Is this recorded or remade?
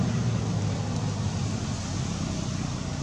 recorded